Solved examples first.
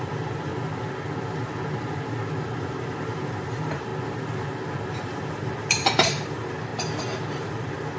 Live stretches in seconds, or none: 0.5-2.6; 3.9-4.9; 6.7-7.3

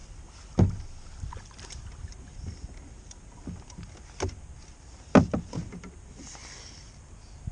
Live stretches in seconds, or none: 0.0-6.4; 7.1-7.5